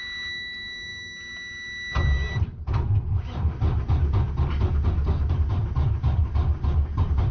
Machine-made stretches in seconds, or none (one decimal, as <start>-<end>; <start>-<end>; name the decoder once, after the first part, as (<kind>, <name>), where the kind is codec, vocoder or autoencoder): none